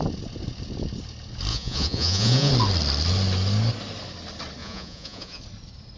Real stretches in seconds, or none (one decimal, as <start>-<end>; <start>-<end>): 0.0-1.5; 2.5-4.6; 5.4-6.0